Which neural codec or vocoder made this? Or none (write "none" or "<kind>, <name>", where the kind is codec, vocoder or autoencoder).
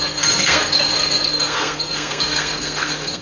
codec, SNAC